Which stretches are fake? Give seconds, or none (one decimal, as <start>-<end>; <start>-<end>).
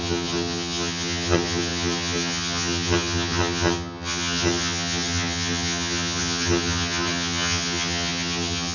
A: 0.0-8.7